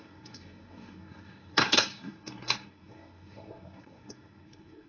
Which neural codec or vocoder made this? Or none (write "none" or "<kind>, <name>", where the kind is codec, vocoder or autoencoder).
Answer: codec, SNAC